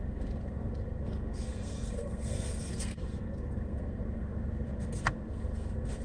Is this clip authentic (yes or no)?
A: no